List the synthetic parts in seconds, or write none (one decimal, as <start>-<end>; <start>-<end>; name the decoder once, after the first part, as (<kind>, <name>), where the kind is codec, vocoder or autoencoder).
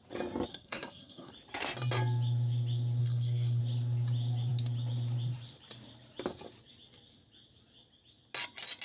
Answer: 0.5-1.3 (codec, SNAC); 3.0-3.6